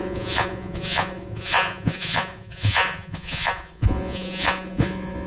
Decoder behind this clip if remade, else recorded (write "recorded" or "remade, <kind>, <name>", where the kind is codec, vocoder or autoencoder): remade, vocoder, Vocos